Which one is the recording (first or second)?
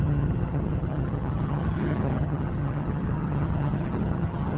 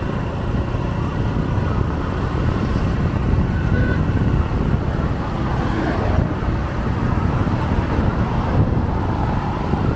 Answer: second